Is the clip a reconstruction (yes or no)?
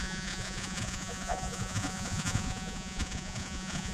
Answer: yes